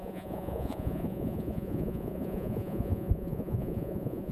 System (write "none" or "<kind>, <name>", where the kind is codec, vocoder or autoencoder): vocoder, Vocos